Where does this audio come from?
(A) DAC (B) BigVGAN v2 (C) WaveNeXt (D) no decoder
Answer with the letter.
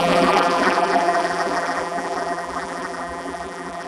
B